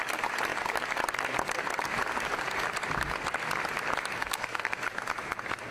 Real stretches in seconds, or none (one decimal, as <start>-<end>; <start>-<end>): 0.0-4.2; 4.8-5.7